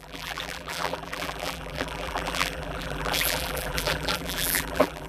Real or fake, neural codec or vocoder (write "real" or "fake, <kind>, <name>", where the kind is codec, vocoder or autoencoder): fake, vocoder, BigVGAN v2